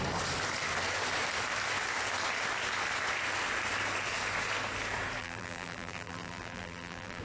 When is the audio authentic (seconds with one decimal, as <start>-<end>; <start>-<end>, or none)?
0.0-5.2